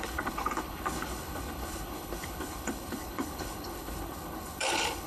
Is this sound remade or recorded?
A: remade